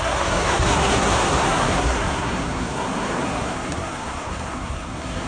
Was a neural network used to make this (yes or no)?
yes